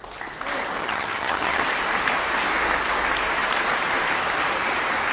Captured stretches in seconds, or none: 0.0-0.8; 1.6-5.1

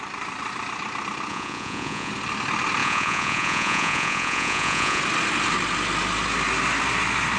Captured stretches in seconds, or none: 0.0-1.3; 2.1-2.8; 5.0-7.4